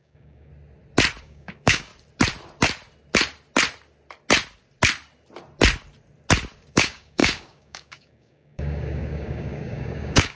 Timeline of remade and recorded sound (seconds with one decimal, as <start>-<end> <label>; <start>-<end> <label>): 0.0-0.5 remade; 0.5-1.2 recorded; 1.2-1.9 remade; 1.9-6.7 recorded; 6.7-10.4 remade